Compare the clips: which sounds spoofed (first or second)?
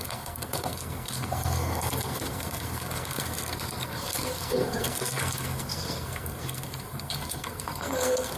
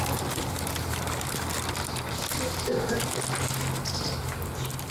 first